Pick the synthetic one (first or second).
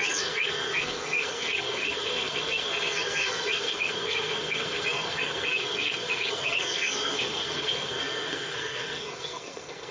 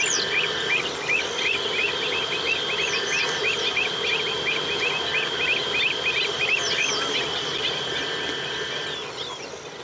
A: first